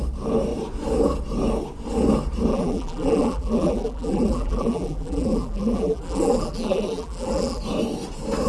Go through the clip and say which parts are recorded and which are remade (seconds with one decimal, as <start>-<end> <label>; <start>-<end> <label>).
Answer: 0.0-2.5 recorded; 2.5-7.6 remade; 7.6-8.5 recorded